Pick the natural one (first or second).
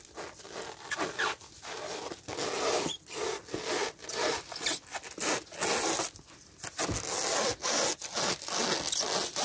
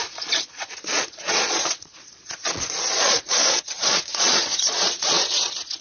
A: first